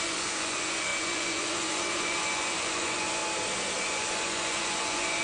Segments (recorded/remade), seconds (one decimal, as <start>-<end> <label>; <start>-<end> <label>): 0.0-3.2 remade; 3.2-3.8 recorded; 3.8-5.2 remade